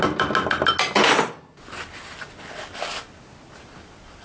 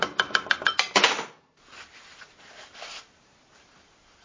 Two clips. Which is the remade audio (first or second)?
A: second